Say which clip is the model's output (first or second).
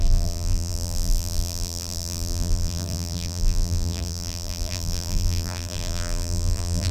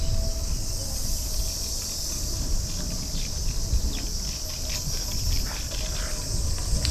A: first